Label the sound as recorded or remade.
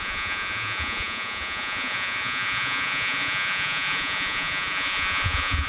remade